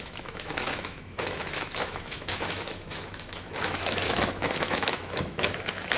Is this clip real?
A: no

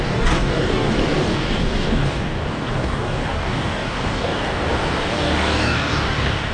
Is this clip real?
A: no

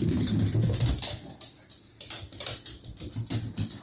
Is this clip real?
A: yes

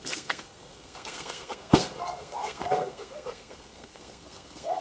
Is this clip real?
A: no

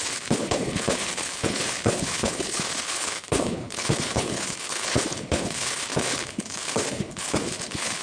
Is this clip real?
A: no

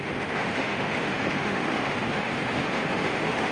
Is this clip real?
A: no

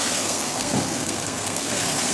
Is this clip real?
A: no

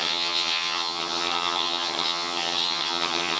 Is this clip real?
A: no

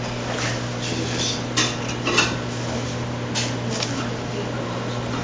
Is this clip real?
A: yes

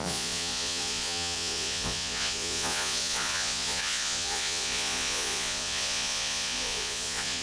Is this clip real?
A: no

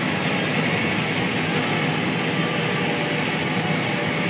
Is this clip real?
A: yes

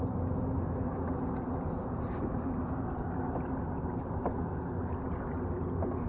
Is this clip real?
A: yes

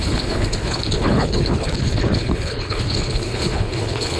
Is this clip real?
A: no